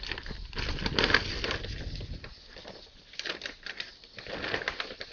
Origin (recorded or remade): recorded